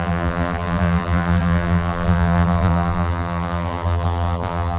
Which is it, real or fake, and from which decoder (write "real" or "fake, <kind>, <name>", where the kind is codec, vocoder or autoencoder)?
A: fake, vocoder, BigVGAN v2